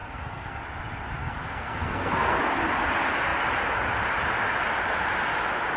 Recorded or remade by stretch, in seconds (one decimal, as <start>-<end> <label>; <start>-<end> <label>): 0.0-0.6 remade; 0.6-1.2 recorded; 1.2-2.4 remade; 2.4-5.8 recorded